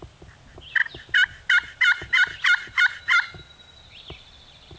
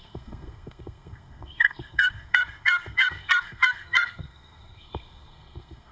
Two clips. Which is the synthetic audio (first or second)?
second